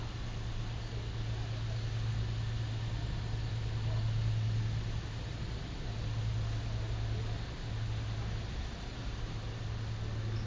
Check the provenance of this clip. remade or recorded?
recorded